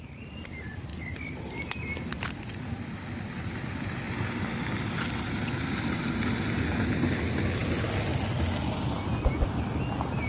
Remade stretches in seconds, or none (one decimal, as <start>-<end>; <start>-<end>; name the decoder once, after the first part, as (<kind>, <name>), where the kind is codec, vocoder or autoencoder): 0.9-6.0 (vocoder, BigVGAN v2)